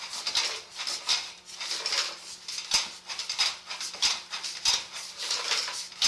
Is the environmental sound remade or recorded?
recorded